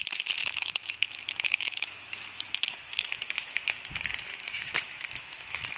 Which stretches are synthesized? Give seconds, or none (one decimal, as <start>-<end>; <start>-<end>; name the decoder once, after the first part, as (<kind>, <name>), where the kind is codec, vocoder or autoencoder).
0.4-3.9 (autoencoder, DAC-VAE); 4.3-5.8